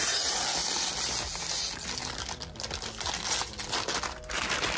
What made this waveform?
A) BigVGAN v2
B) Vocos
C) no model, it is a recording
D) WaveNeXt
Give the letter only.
C